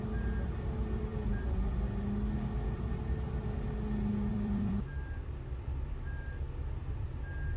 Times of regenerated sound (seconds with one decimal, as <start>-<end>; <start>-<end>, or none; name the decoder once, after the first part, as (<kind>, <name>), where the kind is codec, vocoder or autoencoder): 1.1-1.8 (vocoder, BigVGAN v2); 4.3-7.1